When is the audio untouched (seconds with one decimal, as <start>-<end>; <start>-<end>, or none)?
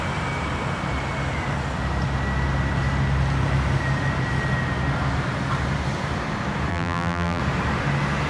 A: 0.0-6.7; 7.4-8.3